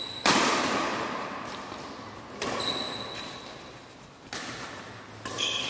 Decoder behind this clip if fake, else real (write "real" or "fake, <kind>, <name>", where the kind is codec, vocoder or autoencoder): real